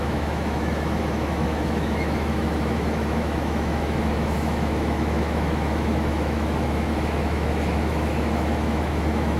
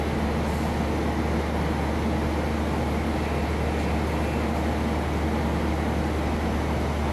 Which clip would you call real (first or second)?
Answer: second